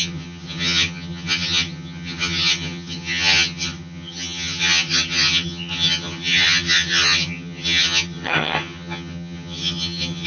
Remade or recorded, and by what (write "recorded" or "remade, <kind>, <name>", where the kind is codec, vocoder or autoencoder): remade, vocoder, HiFi-GAN